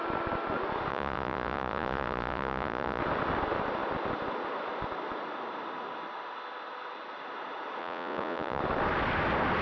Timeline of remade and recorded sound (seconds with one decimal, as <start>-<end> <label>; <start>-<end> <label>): 0.0-0.9 recorded; 0.9-3.0 remade; 3.0-7.8 recorded; 7.8-8.6 remade; 8.6-9.6 recorded